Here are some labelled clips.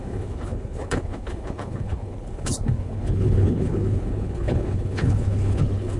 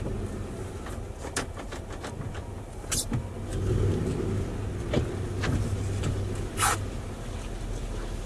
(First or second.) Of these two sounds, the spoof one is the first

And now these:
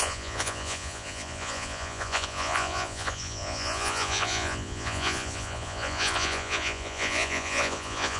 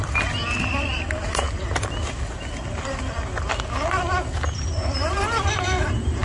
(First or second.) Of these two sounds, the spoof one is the first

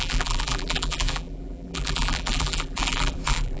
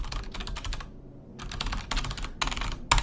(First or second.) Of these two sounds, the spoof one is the first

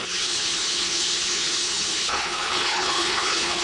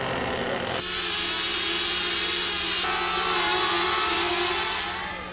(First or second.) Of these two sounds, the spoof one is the first